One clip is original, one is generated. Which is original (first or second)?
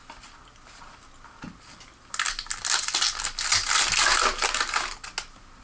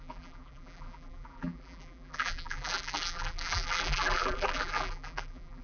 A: first